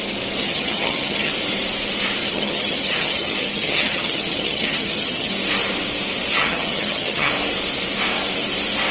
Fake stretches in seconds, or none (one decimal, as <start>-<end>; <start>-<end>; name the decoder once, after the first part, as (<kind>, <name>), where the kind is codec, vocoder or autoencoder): 0.4-1.3 (vocoder, HiFi-GAN); 2.2-5.3; 6.3-7.3